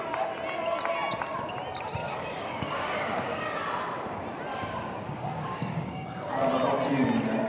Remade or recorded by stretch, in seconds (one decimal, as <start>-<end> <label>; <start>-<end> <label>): 0.0-2.0 recorded; 2.0-3.6 remade; 3.6-4.5 recorded; 4.5-6.3 remade; 6.3-7.5 recorded